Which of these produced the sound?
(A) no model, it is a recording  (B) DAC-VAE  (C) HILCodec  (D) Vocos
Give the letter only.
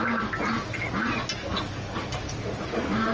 A